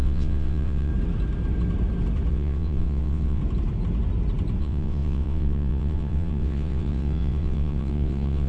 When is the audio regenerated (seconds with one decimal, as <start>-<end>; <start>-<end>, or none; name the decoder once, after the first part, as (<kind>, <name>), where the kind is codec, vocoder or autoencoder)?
0.0-0.9 (vocoder, WaveNeXt); 2.3-3.4; 4.6-8.5